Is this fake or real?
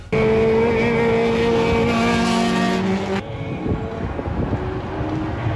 real